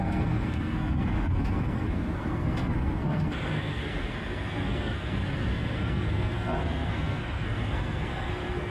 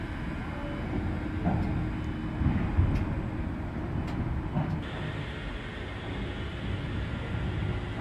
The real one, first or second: second